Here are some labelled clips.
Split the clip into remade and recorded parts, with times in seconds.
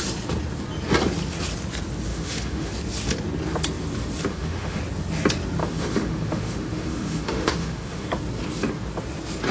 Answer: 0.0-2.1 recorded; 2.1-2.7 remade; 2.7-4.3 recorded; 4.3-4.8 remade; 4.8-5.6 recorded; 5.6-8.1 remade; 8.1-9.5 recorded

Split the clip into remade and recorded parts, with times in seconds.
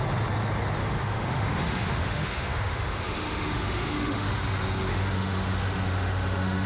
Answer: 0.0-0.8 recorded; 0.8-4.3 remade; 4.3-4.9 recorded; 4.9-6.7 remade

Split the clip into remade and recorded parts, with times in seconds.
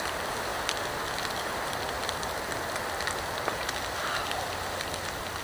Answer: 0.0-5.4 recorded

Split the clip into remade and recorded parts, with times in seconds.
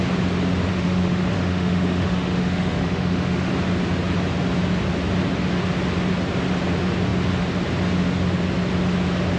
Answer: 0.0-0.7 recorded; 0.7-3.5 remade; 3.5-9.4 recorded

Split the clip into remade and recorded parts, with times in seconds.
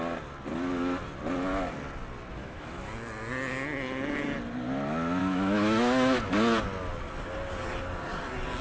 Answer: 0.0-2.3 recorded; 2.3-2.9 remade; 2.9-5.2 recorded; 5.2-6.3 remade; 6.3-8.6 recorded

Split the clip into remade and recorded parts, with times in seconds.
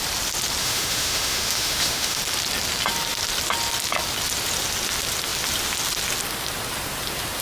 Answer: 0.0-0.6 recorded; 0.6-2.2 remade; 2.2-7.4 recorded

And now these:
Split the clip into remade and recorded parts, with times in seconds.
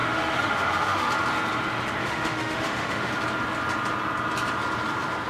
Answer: 0.0-1.1 remade; 1.1-2.0 recorded; 2.0-3.1 remade; 3.1-5.3 recorded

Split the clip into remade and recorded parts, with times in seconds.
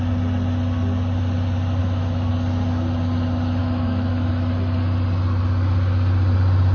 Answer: 0.0-1.8 recorded; 1.8-2.3 remade; 2.3-3.6 recorded; 3.6-4.3 remade; 4.3-6.7 recorded